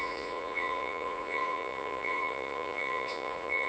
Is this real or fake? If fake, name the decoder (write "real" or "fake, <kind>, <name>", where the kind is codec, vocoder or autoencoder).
fake, vocoder, Vocos